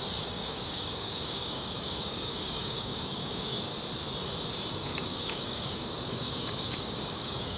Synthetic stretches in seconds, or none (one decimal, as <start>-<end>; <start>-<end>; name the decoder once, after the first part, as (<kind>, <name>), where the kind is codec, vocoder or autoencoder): 0.0-3.7 (codec, DAC); 4.7-7.6